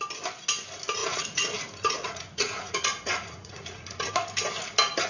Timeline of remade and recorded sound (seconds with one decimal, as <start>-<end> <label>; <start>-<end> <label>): 0.0-1.0 recorded; 1.0-4.1 remade; 4.1-5.1 recorded